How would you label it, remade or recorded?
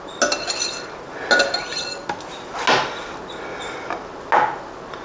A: recorded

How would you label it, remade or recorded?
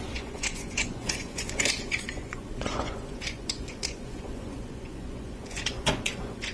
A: remade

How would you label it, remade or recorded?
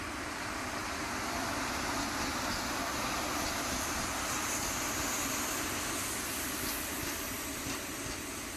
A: recorded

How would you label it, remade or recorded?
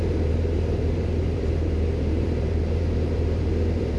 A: remade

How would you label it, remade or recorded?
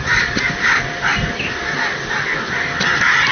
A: recorded